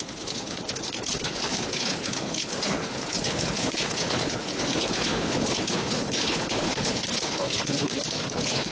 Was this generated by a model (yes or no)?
yes